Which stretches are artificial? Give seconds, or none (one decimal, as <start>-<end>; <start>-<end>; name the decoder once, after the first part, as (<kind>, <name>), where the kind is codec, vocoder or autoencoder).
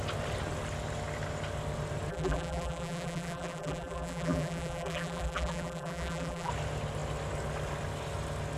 2.1-6.5 (vocoder, BigVGAN v2)